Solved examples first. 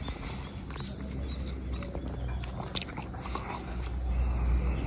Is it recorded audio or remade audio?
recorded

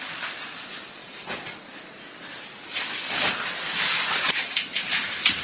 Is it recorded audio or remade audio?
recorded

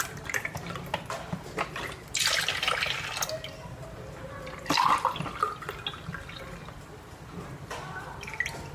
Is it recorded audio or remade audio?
recorded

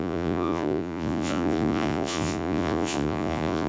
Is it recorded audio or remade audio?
remade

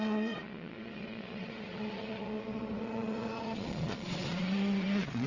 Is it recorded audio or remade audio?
remade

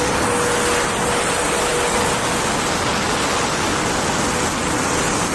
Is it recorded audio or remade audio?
recorded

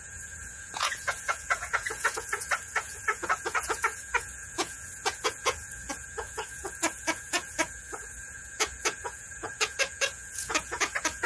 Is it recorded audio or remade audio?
remade